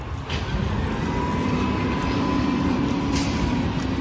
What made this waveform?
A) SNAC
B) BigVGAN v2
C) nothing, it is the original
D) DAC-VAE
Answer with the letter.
C